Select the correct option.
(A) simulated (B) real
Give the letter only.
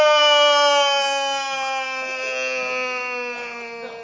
B